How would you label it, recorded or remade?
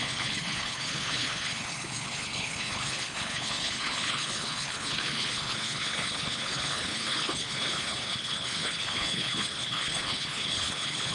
remade